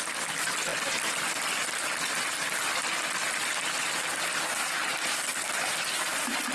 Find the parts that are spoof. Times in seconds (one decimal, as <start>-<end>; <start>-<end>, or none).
none